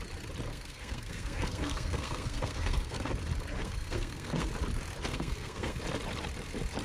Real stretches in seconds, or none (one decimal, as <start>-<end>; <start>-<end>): 0.0-0.5; 3.1-3.6; 4.5-5.1; 5.8-6.8